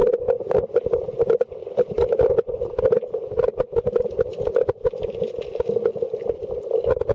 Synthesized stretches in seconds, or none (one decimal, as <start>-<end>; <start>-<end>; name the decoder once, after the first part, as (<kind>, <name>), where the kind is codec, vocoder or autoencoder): 0.7-7.1 (vocoder, BigVGAN v2)